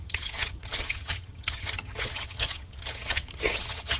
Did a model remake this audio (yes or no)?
yes